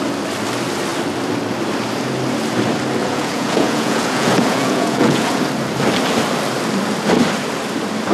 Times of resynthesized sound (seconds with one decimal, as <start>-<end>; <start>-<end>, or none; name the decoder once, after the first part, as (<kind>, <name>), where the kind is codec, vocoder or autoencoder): 3.0-5.4 (vocoder, Vocos)